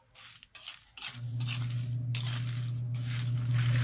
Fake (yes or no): no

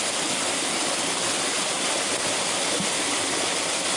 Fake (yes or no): no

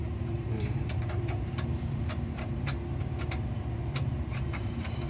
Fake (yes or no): yes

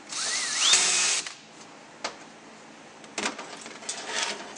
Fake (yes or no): no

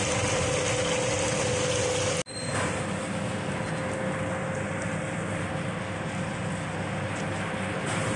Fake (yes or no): no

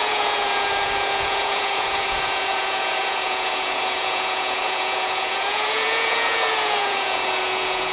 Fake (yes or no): yes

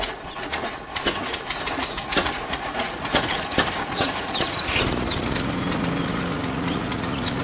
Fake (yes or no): yes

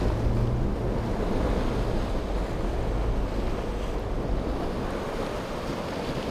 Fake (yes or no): no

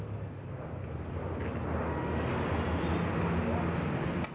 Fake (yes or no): no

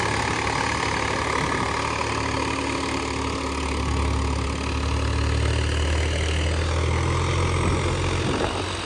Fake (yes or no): no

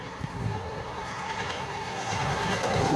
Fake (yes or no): yes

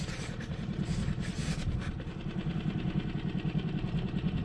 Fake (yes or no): no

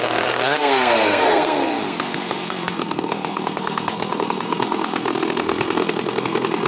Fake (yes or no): yes